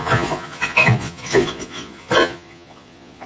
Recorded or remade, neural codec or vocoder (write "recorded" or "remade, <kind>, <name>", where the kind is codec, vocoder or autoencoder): remade, vocoder, Vocos